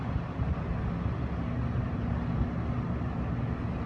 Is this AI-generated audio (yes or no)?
no